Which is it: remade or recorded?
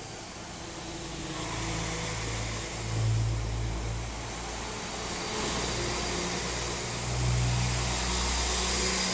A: recorded